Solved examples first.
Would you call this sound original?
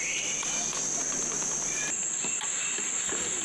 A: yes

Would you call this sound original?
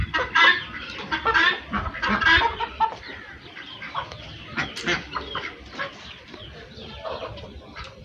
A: no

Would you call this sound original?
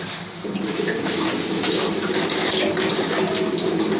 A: yes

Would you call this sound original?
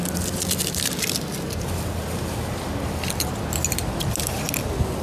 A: yes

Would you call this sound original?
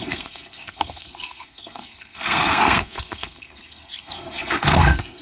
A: no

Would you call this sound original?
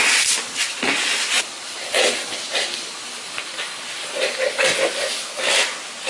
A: yes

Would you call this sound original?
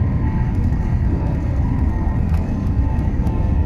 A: no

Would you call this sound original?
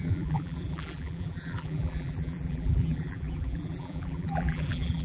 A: no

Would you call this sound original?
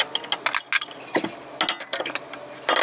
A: yes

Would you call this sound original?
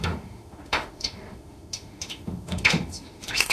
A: no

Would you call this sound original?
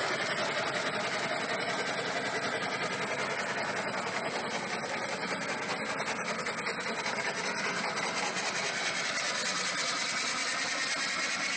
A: yes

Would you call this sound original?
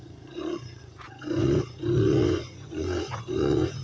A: no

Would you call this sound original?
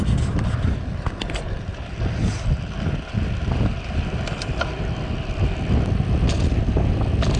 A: yes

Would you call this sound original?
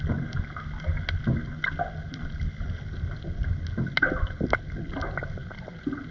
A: yes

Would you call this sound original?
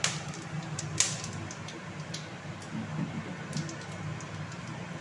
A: yes